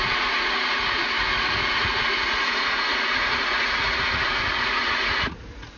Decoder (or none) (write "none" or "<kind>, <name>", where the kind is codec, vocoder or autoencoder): vocoder, Vocos